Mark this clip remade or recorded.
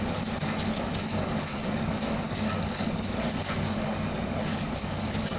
remade